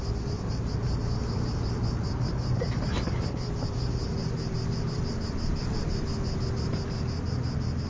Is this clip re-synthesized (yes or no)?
no